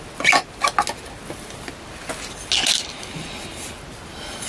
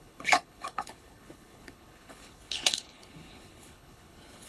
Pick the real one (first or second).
first